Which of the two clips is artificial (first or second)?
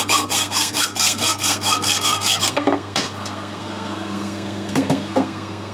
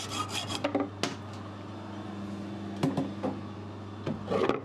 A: first